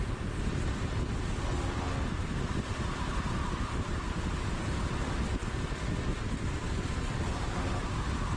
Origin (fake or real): real